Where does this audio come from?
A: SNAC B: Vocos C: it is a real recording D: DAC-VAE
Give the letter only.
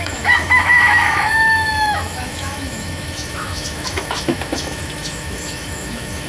D